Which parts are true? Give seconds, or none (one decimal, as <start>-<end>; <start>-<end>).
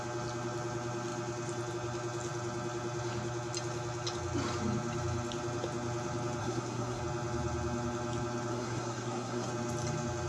0.0-6.4; 7.0-8.5; 9.5-10.3